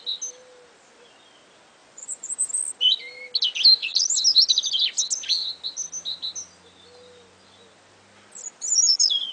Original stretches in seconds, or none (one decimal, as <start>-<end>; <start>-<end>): 0.0-1.8; 2.5-9.3